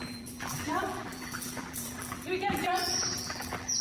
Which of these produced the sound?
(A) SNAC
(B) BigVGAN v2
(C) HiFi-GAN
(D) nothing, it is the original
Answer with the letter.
B